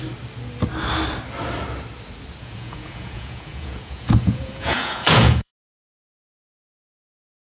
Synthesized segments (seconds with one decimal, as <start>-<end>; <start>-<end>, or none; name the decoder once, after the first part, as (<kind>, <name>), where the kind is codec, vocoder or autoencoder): 2.4-5.5 (vocoder, Vocos)